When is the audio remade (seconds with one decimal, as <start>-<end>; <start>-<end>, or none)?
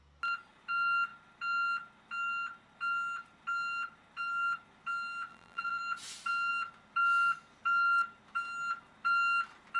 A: 5.3-5.8